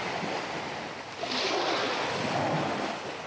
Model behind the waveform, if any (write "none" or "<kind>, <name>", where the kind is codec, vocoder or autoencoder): none